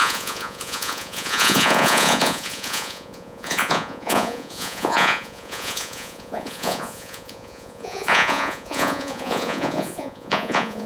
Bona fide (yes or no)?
no